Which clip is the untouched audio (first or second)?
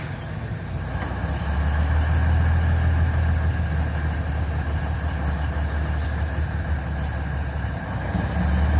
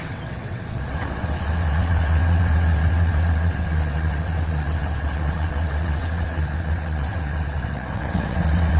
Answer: first